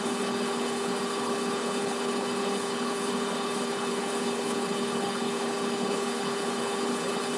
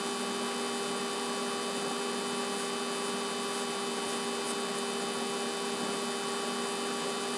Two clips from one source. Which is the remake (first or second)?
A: first